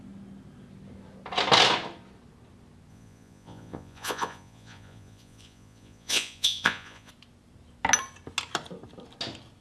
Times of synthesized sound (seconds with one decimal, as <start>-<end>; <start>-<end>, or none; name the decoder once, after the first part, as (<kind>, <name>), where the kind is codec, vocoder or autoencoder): 2.9-7.1 (vocoder, Vocos)